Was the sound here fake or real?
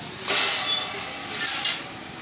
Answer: real